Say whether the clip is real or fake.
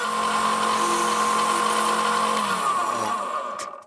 real